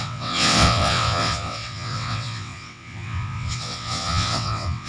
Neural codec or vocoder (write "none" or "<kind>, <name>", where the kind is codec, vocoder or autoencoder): vocoder, WaveNeXt